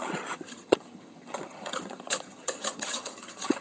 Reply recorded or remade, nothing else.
remade